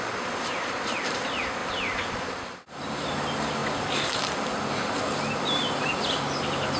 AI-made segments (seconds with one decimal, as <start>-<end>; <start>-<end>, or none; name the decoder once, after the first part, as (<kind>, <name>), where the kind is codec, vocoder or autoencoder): none